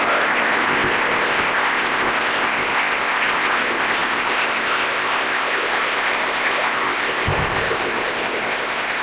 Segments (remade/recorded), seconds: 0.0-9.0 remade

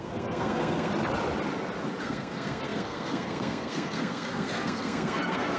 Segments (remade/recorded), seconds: 0.0-0.9 remade; 0.9-2.0 recorded; 2.0-5.6 remade

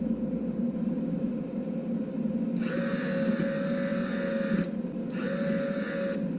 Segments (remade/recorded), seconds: 0.0-6.4 recorded

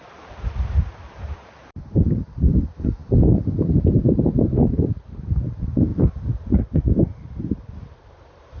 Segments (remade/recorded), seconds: 0.0-3.0 remade; 3.0-3.7 recorded; 3.7-8.6 remade

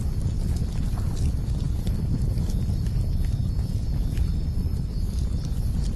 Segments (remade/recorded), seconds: 0.0-6.0 recorded